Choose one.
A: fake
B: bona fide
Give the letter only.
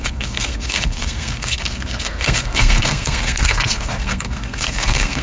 A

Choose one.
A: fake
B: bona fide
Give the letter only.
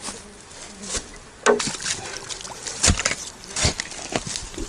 B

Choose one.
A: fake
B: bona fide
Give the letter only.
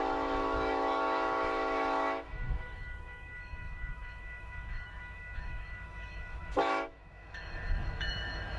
A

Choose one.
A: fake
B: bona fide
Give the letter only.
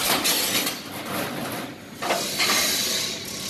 B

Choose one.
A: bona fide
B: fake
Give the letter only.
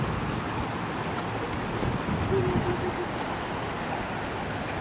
A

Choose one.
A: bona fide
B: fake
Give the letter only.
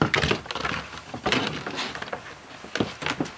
A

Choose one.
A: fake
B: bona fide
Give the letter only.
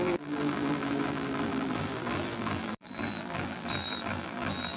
A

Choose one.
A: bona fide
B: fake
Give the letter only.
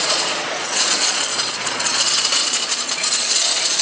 B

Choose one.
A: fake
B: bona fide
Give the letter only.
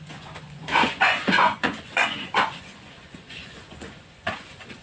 A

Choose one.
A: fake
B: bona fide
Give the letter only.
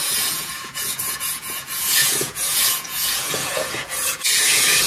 A